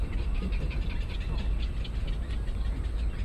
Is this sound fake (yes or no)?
no